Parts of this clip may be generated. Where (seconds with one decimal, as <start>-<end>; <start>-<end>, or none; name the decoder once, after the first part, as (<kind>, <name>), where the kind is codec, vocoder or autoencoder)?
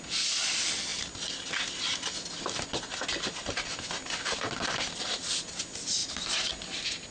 none